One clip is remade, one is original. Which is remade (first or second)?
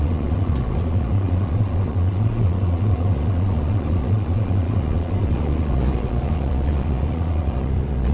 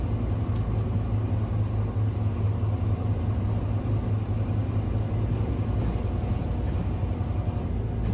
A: first